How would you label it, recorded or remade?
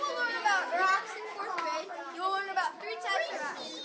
recorded